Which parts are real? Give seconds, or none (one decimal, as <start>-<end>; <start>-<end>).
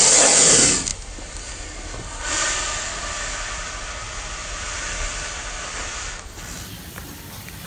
0.0-7.7